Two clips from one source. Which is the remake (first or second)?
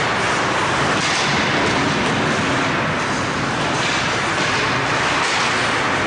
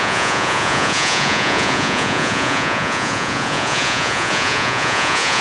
second